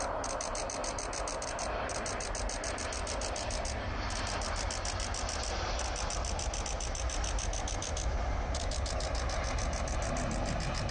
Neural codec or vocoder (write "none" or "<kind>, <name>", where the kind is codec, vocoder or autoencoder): none